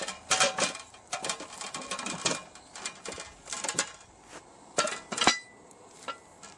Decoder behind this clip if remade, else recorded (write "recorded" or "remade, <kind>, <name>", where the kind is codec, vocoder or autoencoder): recorded